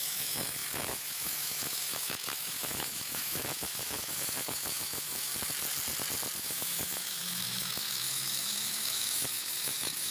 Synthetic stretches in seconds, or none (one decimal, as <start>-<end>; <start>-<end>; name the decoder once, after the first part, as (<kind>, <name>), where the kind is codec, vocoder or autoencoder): 0.0-5.3 (autoencoder, DAC-VAE); 6.4-10.1